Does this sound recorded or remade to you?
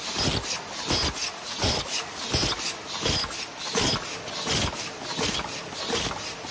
recorded